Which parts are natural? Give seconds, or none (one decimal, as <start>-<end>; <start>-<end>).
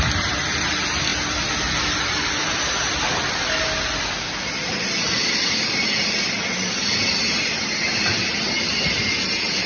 1.1-2.0